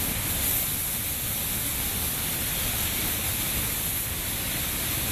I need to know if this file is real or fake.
real